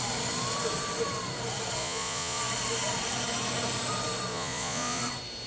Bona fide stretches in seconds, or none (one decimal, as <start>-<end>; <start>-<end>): 0.0-1.8; 2.4-4.3; 5.0-5.5